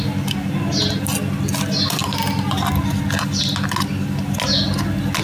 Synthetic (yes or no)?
no